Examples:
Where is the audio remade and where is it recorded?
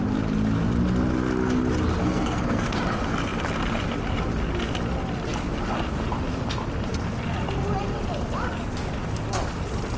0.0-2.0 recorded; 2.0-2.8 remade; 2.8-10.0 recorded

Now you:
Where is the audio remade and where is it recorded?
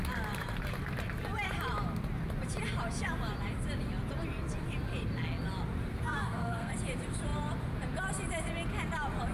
0.0-5.9 recorded; 5.9-6.7 remade; 6.7-9.3 recorded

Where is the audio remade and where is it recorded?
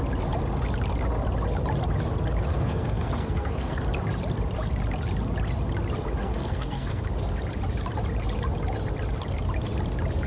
0.0-2.5 recorded; 2.5-3.8 remade; 3.8-6.2 recorded; 6.2-7.0 remade; 7.0-10.3 recorded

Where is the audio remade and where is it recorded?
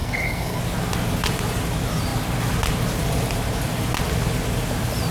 0.0-0.6 remade; 0.6-5.1 recorded